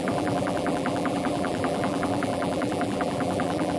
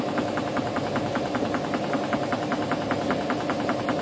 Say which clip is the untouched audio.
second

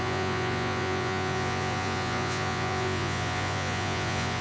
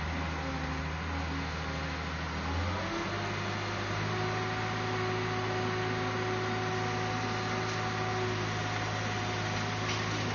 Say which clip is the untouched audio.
second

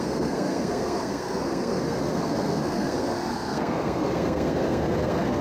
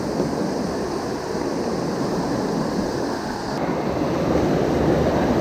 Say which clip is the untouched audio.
second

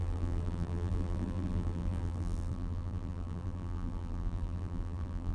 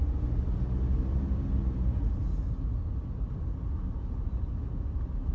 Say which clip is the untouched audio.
second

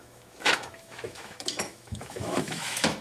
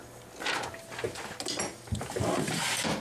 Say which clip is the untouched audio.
second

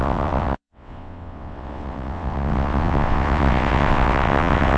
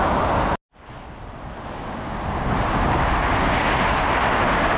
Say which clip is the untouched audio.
second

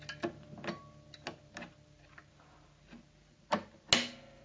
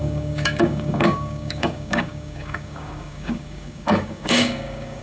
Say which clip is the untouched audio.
first